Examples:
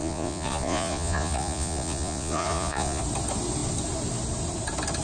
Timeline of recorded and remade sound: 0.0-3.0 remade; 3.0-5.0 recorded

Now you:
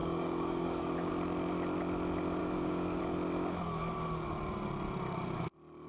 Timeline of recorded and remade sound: 0.0-1.1 remade; 1.1-2.4 recorded; 2.4-3.0 remade; 3.0-5.9 recorded